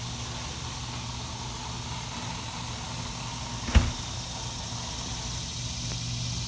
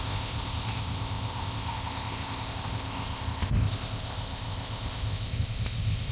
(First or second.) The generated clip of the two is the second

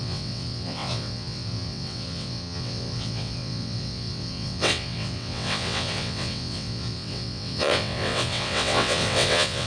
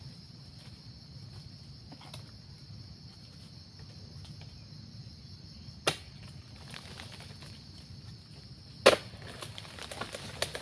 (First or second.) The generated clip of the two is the first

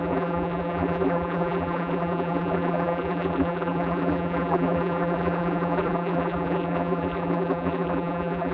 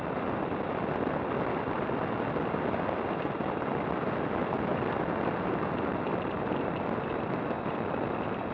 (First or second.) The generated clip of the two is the first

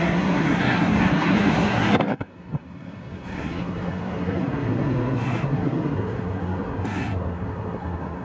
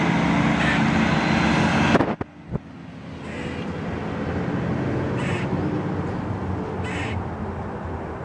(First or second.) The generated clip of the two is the first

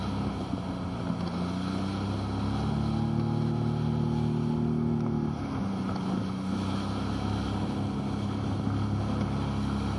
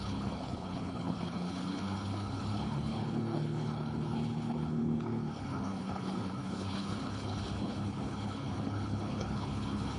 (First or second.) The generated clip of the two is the second